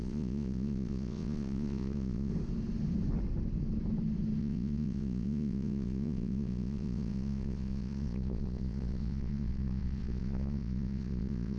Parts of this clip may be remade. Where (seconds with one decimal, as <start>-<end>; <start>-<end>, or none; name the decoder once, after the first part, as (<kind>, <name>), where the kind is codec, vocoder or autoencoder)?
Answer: 0.0-2.3 (vocoder, Vocos); 4.4-11.6

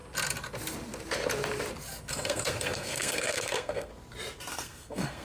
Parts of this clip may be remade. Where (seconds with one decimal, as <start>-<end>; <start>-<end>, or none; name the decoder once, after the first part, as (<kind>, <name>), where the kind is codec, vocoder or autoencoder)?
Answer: 2.1-3.9 (codec, SNAC); 4.5-5.2

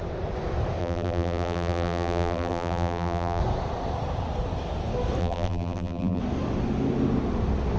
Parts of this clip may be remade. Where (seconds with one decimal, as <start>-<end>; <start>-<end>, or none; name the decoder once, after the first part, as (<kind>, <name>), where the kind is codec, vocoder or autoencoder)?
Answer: 0.8-3.4 (vocoder, BigVGAN v2); 5.2-6.2

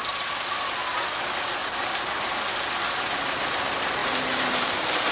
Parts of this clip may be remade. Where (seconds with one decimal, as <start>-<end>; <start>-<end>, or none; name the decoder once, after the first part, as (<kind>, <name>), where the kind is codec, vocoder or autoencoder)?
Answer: 1.6-2.2 (vocoder, BigVGAN v2); 4.0-5.1

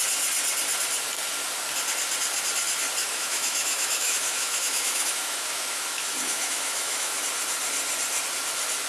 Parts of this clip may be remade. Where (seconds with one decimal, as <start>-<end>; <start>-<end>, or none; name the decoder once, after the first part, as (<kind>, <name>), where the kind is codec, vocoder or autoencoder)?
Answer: 3.0-7.2 (autoencoder, DAC-VAE)

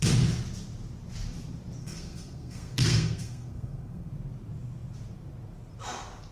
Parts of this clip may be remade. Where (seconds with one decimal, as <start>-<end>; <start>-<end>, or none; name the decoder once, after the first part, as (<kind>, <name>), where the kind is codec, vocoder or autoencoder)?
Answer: 1.8-4.1 (codec, SNAC)

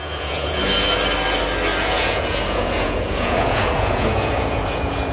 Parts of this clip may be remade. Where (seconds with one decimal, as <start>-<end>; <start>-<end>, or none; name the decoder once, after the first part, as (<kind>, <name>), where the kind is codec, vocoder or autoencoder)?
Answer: 0.0-0.6 (vocoder, Vocos); 1.8-5.1

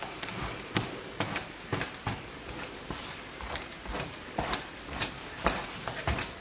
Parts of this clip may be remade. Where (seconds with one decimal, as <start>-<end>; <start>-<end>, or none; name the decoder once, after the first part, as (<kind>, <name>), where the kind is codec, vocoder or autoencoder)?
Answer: 1.7-5.5 (vocoder, BigVGAN v2)